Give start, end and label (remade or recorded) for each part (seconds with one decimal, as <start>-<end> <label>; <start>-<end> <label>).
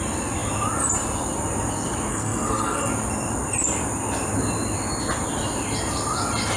0.0-2.1 recorded; 2.1-2.9 remade; 2.9-6.6 recorded